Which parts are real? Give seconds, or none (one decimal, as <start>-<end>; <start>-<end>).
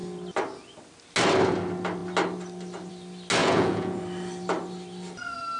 0.0-3.4; 4.0-5.6